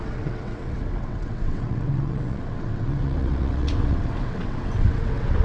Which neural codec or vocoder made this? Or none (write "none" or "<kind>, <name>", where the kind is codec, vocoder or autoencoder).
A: vocoder, WaveNeXt